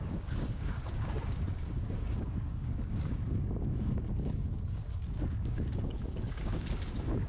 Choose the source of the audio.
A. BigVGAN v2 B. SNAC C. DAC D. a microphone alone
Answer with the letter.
C